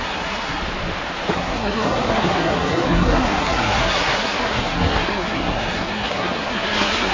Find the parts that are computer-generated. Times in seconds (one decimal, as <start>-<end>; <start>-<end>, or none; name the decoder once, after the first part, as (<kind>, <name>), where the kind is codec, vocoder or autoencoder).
0.0-0.6 (codec, SNAC); 1.3-7.1